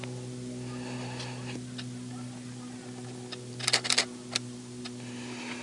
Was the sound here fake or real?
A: real